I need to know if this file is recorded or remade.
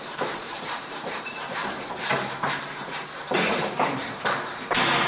remade